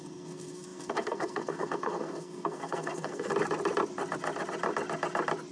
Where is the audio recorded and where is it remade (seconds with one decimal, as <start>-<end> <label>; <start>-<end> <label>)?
0.0-3.3 remade; 3.3-5.5 recorded